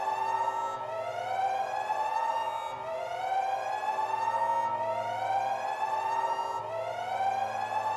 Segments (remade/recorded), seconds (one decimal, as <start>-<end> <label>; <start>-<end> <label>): 0.0-8.0 recorded